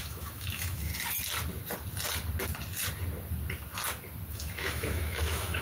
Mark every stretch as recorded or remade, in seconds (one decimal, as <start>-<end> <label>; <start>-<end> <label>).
0.0-0.9 remade; 0.9-4.3 recorded; 4.3-5.6 remade